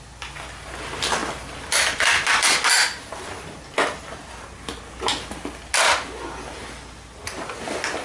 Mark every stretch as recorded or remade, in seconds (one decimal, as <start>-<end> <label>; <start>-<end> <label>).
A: 0.0-8.0 recorded